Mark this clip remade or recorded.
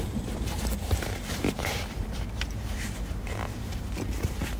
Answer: remade